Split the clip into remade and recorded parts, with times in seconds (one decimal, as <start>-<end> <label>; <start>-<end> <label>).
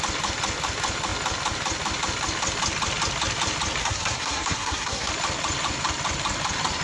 0.0-3.8 recorded; 3.8-5.1 remade; 5.1-6.8 recorded